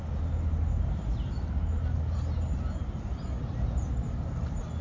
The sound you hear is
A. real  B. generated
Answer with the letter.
A